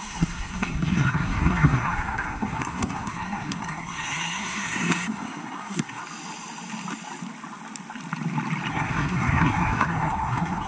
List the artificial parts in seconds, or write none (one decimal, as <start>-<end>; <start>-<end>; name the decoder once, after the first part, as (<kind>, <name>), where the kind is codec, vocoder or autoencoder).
0.0-6.0 (codec, SNAC); 8.7-10.7